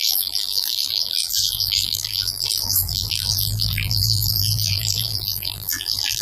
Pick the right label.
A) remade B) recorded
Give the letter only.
A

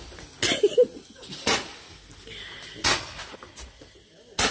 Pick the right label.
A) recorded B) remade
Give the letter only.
A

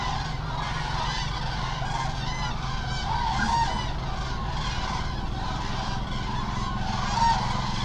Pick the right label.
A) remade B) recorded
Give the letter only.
B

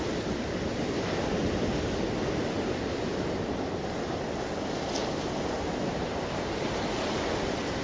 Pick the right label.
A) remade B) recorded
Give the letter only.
B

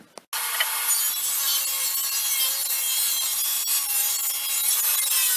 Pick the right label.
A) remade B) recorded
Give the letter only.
B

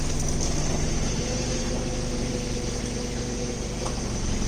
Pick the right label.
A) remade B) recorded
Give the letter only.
B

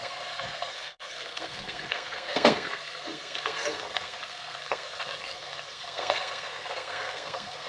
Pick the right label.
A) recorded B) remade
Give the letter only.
B